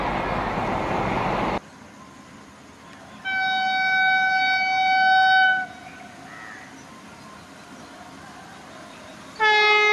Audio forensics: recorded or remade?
recorded